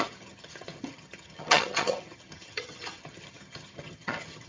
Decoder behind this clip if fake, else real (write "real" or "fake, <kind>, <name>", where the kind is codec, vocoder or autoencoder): fake, vocoder, HiFi-GAN